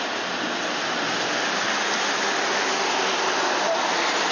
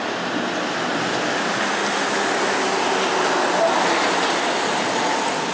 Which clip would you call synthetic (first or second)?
first